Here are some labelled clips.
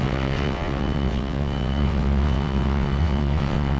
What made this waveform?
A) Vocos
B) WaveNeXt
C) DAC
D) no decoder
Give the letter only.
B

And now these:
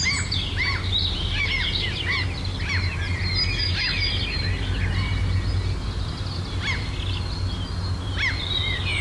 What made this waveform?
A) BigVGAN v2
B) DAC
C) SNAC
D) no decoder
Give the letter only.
D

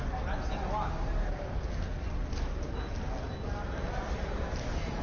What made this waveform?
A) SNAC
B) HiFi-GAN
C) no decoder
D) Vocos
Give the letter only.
C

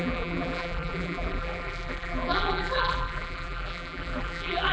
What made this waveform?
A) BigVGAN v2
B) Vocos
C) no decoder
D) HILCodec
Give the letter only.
A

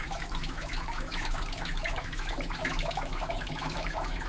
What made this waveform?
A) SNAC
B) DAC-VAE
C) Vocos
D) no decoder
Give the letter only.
B